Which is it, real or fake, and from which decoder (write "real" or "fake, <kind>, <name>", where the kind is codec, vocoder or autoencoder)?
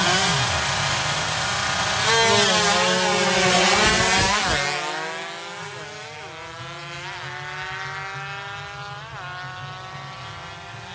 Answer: real